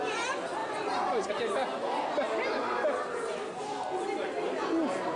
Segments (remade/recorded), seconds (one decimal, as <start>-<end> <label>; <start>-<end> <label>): 0.0-5.2 recorded